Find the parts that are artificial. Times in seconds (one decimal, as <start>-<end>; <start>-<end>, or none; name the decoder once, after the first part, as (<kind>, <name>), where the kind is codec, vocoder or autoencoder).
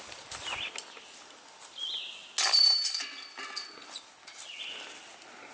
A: none